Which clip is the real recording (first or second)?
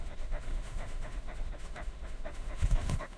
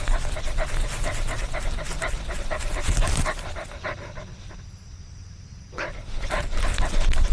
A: second